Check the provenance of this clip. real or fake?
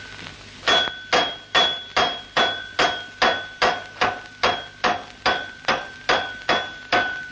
real